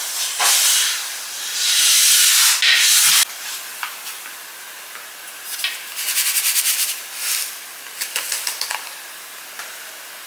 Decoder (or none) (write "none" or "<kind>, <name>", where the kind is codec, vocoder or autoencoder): none